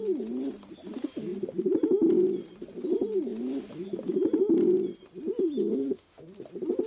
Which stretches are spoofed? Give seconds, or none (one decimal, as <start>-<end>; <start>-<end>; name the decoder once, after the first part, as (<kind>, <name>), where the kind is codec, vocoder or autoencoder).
5.7-6.3 (autoencoder, DAC-VAE)